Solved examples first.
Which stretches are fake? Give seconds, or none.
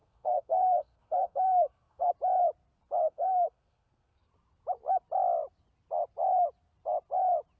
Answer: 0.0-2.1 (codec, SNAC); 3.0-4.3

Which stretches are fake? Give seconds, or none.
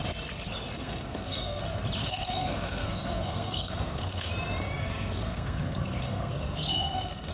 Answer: 0.8-1.6 (codec, SNAC); 2.0-4.3; 4.8-7.3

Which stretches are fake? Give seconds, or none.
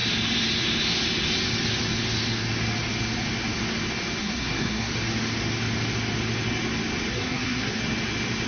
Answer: 4.2-4.9 (codec, SNAC); 7.1-7.8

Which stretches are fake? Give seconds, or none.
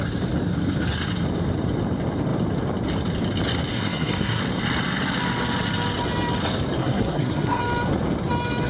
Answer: 3.7-4.4 (codec, SNAC); 6.8-7.6